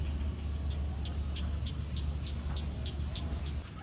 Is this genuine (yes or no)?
yes